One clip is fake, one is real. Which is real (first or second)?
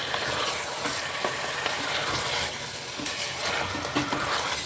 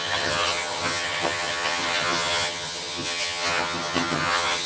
first